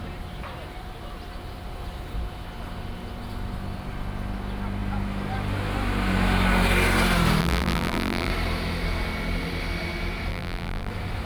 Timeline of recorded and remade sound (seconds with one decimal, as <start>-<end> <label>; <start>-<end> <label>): 0.0-7.4 recorded; 7.4-8.3 remade; 8.3-10.3 recorded; 10.3-10.9 remade; 10.9-11.3 recorded